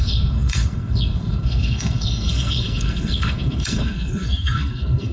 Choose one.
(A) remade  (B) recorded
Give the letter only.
A